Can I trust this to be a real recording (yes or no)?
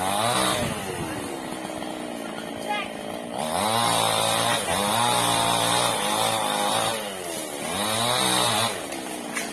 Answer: yes